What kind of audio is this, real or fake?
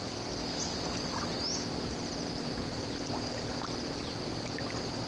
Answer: real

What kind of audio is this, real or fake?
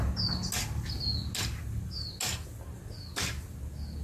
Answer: real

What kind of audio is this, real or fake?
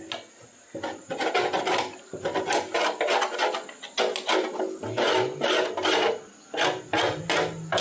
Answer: real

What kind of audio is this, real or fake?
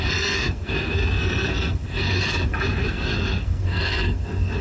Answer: fake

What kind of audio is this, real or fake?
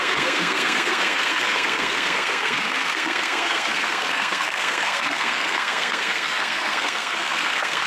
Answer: fake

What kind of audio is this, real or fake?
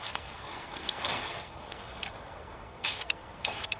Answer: fake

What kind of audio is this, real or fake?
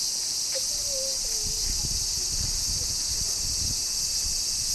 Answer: real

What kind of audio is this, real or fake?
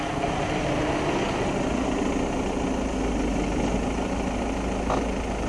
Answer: real